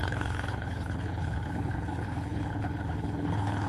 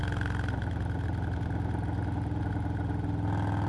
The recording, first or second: second